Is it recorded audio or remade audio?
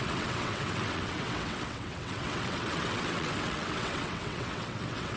remade